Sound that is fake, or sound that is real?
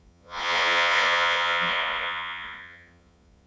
fake